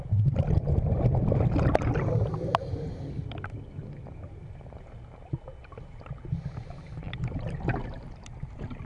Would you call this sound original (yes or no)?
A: yes